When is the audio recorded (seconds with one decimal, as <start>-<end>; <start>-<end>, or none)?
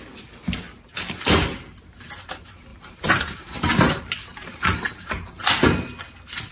0.0-2.7; 4.0-4.5; 5.3-6.5